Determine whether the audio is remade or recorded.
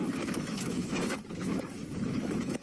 remade